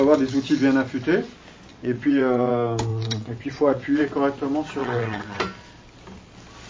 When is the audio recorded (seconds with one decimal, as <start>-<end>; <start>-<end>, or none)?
0.0-1.7; 2.5-2.9; 4.0-4.8; 5.4-6.7